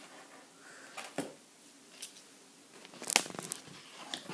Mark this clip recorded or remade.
recorded